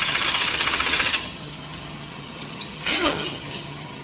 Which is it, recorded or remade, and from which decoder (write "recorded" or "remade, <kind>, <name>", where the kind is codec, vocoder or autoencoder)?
remade, vocoder, HiFi-GAN